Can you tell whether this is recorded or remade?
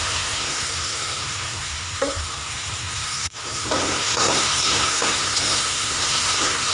remade